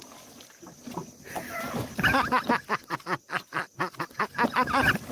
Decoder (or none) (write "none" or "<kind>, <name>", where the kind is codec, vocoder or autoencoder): none